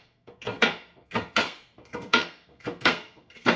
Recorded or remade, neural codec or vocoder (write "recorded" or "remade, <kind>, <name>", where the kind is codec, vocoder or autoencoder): remade, codec, SNAC